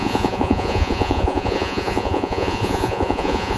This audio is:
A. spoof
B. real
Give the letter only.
A